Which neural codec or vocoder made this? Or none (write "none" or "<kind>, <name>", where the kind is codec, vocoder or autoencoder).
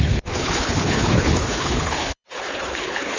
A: codec, HILCodec